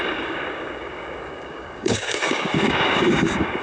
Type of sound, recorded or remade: remade